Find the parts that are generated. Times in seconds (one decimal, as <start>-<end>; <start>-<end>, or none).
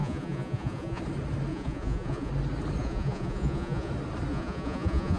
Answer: 0.0-1.0; 1.5-2.3; 2.8-3.9; 4.3-5.2